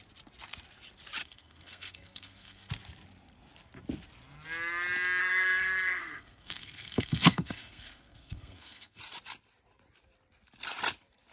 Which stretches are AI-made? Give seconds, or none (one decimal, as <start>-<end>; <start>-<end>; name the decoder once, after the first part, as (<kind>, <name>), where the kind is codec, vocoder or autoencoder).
1.2-2.7 (codec, SNAC); 5.2-9.0